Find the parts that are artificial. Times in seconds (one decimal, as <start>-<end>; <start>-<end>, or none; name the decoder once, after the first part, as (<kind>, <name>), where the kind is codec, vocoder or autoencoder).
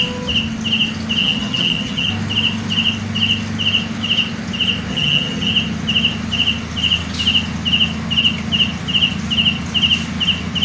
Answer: 1.2-2.1 (vocoder, HiFi-GAN); 4.9-5.5